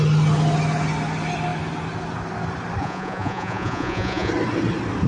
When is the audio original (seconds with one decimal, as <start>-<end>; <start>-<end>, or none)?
0.0-2.8; 4.3-5.1